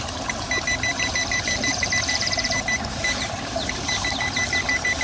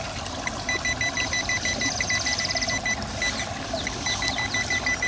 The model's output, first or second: first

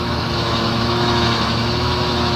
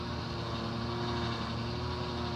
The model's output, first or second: first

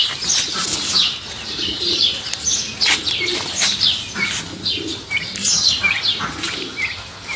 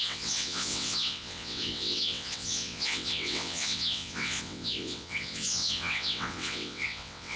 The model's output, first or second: second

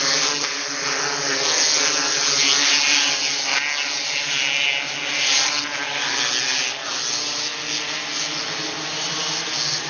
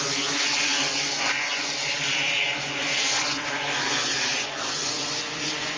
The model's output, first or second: second